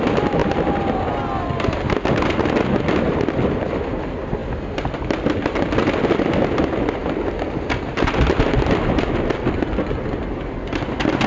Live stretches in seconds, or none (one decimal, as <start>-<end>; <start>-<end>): 0.0-11.3